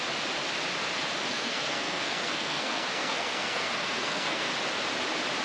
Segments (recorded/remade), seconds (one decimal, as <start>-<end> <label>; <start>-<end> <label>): 0.0-1.3 recorded; 1.3-4.5 remade; 4.5-5.4 recorded